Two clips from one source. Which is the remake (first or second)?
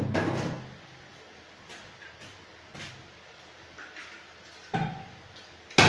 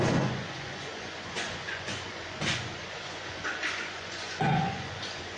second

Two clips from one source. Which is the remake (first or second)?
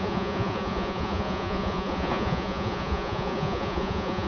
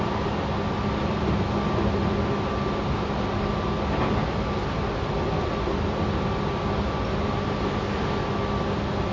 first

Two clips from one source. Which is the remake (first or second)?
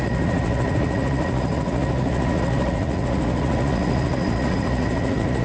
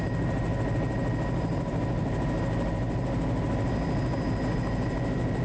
first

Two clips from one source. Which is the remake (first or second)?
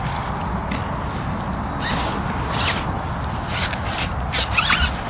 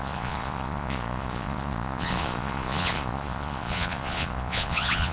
second